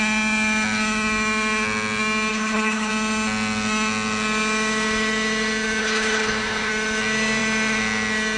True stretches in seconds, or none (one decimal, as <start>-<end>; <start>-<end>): 0.0-2.3; 2.9-5.8; 6.7-8.4